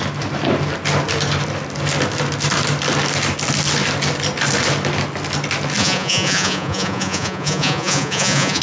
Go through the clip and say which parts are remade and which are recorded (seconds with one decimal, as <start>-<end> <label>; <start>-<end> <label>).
0.0-5.8 recorded; 5.8-8.6 remade